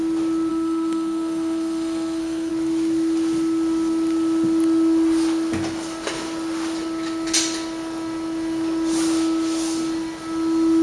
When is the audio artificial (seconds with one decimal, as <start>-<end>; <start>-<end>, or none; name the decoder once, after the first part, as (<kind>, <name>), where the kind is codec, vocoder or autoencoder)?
0.5-2.5 (codec, SNAC)